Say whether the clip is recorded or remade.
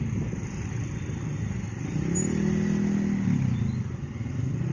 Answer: recorded